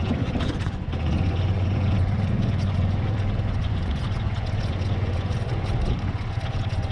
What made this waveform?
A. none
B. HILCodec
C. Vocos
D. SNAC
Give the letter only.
C